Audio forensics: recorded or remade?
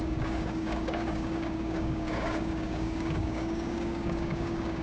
remade